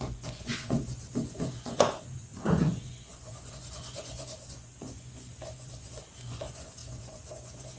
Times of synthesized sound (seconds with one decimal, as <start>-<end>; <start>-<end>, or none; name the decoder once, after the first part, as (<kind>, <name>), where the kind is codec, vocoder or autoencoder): 0.0-7.8 (vocoder, Vocos)